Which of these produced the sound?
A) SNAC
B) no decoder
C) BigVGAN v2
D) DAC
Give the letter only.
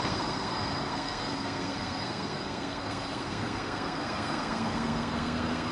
A